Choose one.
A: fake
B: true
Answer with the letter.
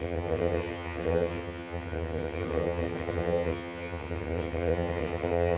A